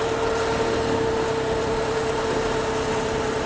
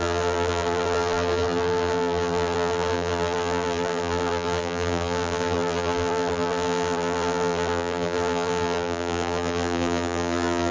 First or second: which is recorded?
first